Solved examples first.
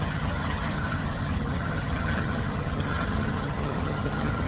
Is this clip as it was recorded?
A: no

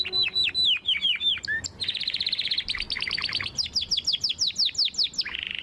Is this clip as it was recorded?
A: yes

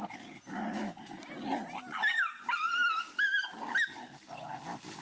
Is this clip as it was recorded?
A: yes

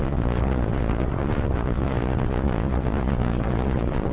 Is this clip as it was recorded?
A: no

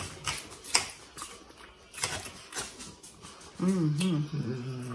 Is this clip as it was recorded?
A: yes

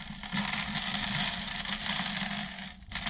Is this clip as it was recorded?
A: yes